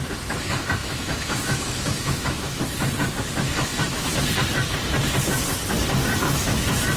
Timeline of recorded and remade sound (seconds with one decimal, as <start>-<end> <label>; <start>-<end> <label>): 0.0-0.8 recorded; 0.8-2.6 remade; 2.6-7.0 recorded